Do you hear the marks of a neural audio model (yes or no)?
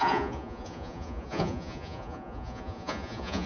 yes